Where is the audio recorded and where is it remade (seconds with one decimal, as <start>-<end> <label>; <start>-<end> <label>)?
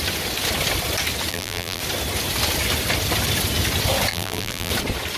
0.0-1.3 recorded; 1.3-1.8 remade; 1.8-4.1 recorded; 4.1-4.7 remade; 4.7-5.2 recorded